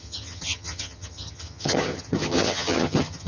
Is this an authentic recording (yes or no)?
no